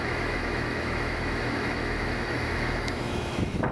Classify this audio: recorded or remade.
remade